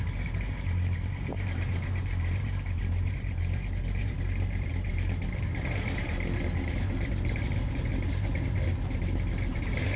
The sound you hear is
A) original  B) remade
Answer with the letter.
B